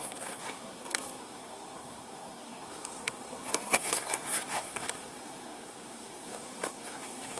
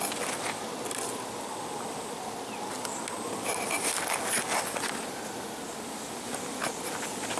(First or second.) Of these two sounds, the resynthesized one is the first